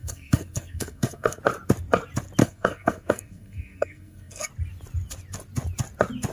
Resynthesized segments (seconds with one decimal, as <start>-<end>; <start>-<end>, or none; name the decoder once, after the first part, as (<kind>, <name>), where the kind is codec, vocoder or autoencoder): 0.0-1.4 (codec, SNAC); 2.4-4.5